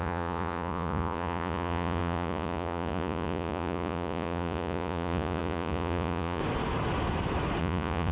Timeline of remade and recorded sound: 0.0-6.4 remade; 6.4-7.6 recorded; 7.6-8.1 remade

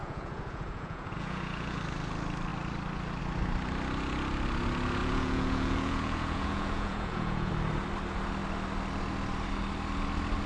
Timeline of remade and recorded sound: 0.0-1.8 remade; 1.8-5.0 recorded; 5.0-7.5 remade; 7.5-10.5 recorded

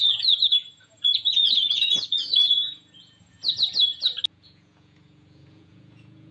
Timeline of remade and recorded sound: 0.0-3.4 remade; 3.4-4.3 recorded; 4.3-6.3 remade

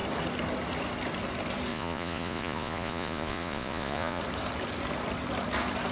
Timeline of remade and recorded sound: 0.0-1.7 recorded; 1.7-4.2 remade; 4.2-5.9 recorded

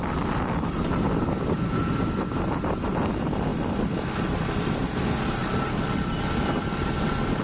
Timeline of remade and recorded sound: 0.0-7.4 recorded

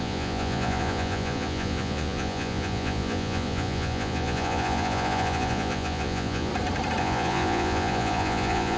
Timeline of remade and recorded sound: 0.0-6.5 remade; 6.5-7.0 recorded; 7.0-8.8 remade

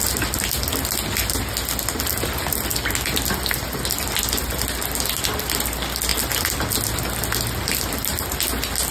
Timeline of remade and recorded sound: 0.0-8.9 recorded

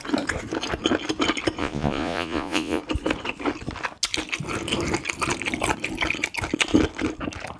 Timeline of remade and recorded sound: 0.0-1.6 recorded; 1.6-2.8 remade; 2.8-7.6 recorded